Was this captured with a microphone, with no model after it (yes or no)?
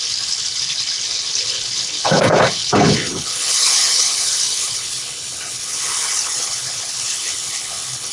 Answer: no